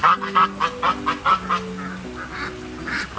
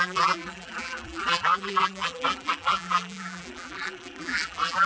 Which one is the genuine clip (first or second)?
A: first